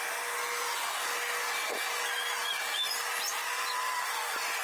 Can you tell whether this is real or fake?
real